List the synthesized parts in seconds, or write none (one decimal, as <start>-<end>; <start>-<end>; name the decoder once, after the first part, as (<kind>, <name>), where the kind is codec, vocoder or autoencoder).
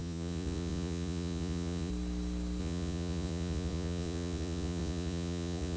0.0-1.9 (vocoder, Vocos); 2.6-5.8